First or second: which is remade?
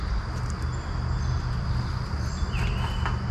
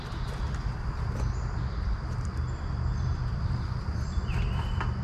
second